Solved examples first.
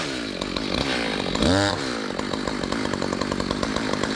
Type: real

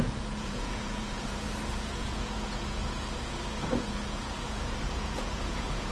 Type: fake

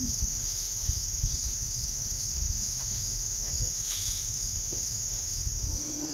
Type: fake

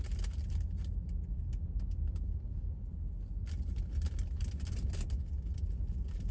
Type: real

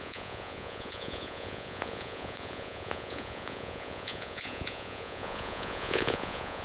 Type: fake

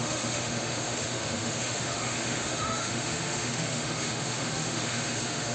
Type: fake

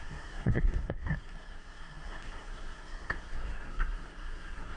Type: fake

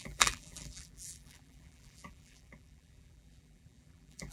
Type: fake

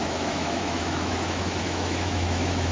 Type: fake